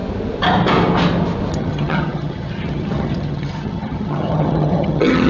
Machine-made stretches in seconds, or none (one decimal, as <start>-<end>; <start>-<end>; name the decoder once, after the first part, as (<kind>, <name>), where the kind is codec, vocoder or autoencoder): 1.5-5.3 (vocoder, HiFi-GAN)